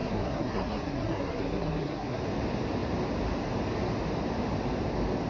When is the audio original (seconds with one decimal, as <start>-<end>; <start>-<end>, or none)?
2.2-5.3